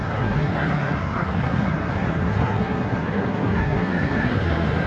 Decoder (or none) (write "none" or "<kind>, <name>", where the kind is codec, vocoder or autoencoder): codec, SNAC